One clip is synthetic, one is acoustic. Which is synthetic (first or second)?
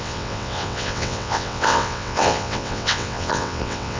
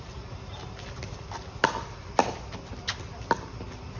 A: first